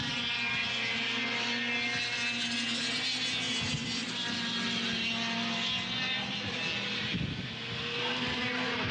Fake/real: real